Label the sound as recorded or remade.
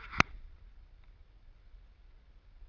recorded